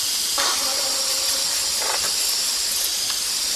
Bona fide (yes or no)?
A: yes